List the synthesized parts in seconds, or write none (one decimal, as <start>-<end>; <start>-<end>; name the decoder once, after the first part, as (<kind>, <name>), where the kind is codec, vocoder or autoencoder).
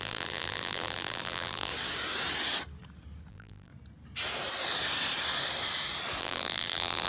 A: 0.0-1.7 (vocoder, BigVGAN v2); 3.3-3.7; 6.2-7.1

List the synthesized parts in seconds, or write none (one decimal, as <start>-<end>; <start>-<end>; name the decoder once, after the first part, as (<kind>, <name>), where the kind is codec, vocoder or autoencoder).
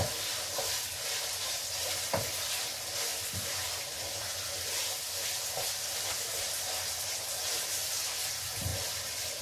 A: 3.1-6.3 (vocoder, BigVGAN v2); 8.7-9.4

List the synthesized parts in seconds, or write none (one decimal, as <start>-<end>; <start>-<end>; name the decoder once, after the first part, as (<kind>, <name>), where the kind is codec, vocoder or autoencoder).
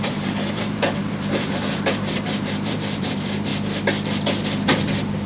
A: 0.0-3.5 (vocoder, BigVGAN v2)